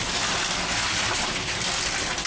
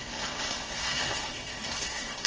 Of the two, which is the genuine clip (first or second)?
first